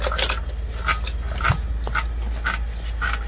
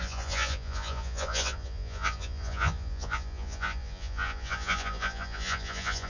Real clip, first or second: first